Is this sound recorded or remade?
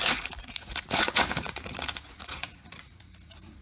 remade